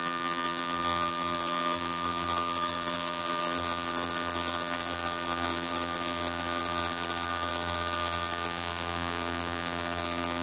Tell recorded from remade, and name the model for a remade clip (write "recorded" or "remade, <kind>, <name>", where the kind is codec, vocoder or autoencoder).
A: remade, vocoder, BigVGAN v2